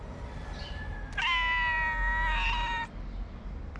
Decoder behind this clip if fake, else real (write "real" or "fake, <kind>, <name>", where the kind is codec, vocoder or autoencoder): real